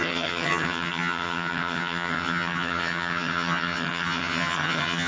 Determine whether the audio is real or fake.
fake